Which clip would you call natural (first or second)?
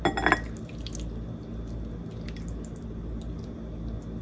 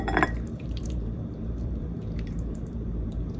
first